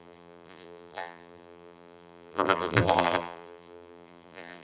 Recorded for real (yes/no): no